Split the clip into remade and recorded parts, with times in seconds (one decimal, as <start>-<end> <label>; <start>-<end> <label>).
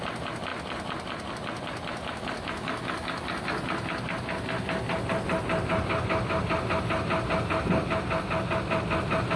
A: 0.0-9.4 recorded